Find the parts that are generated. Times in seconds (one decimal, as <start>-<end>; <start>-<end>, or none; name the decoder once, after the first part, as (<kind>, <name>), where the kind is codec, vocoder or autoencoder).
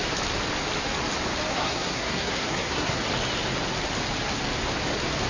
1.5-3.0 (codec, SNAC)